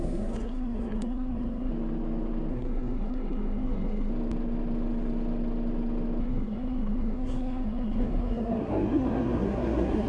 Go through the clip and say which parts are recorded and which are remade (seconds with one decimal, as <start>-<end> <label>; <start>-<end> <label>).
0.0-1.7 remade; 1.7-2.5 recorded; 2.5-4.1 remade; 4.1-6.2 recorded; 6.2-10.1 remade